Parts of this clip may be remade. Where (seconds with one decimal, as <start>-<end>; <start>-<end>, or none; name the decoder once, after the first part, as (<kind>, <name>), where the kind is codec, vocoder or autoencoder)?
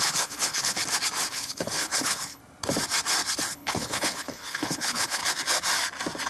0.0-0.8 (codec, HILCodec); 1.3-2.4; 3.5-5.2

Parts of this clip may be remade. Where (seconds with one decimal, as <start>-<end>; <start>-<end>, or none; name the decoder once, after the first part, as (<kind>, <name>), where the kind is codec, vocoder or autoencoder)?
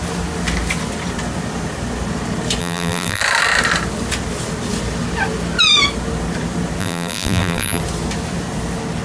2.6-3.2 (vocoder, BigVGAN v2); 6.8-7.8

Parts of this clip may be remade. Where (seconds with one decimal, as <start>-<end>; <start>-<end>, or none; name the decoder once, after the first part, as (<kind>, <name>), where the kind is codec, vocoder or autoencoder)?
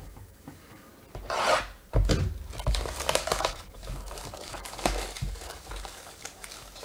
0.0-0.9 (codec, DAC); 2.7-6.8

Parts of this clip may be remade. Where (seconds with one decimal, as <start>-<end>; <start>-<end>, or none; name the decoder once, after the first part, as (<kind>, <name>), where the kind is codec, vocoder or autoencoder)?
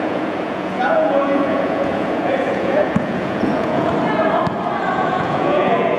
0.0-3.9 (vocoder, Vocos); 4.9-6.0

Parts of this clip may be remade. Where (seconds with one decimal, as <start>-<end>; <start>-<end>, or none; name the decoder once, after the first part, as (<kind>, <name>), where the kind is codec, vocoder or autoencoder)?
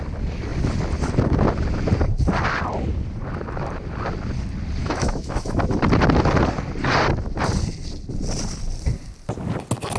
4.8-5.6 (autoencoder, DAC-VAE)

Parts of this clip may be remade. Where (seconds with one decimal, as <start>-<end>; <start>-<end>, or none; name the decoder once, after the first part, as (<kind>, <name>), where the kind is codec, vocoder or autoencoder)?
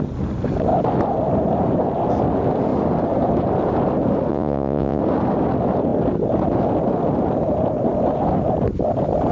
4.3-5.0 (vocoder, Vocos)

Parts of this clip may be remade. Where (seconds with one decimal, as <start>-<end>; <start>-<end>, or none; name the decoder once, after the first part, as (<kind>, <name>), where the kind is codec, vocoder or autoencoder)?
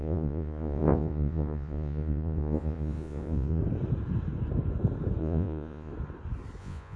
0.0-3.6 (vocoder, Vocos); 5.2-5.9; 6.6-7.0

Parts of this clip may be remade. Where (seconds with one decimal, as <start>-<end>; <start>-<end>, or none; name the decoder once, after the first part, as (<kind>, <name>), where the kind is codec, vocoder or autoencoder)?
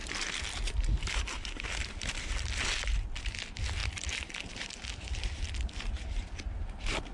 0.0-2.6 (vocoder, BigVGAN v2); 3.8-4.5